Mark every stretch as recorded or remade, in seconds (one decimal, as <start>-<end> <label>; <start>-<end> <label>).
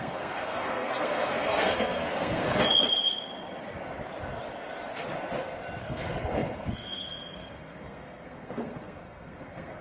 0.0-2.5 remade; 2.5-5.8 recorded; 5.8-9.8 remade